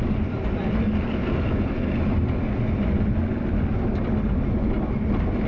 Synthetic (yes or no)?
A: no